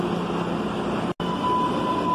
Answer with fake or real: real